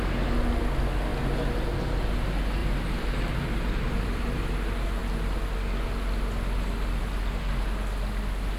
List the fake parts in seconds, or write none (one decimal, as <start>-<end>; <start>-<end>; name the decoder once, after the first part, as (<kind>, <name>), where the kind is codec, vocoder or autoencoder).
2.6-4.4 (vocoder, BigVGAN v2)